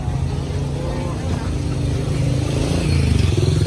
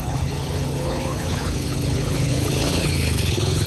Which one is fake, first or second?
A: second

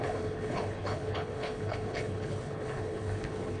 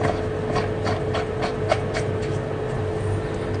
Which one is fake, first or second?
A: first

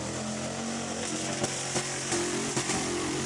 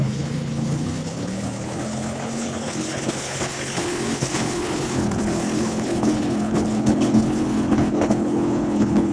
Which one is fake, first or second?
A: second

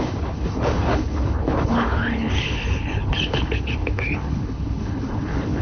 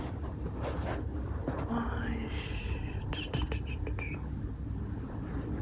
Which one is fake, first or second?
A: first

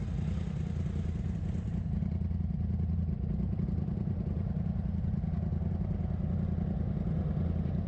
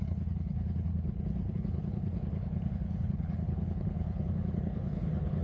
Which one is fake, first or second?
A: second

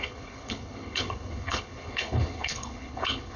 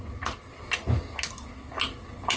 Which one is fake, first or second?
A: first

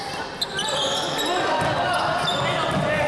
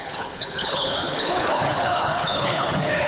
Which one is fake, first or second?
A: second